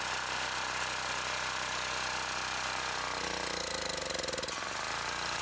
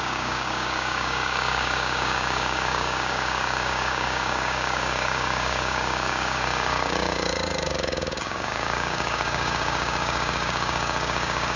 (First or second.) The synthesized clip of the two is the second